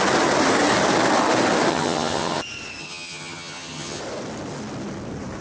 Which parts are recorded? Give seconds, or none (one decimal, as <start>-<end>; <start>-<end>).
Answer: 0.0-1.7; 2.4-2.8; 4.0-5.4